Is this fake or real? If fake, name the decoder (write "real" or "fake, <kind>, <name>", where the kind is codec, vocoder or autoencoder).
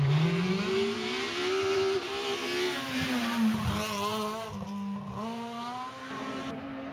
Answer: real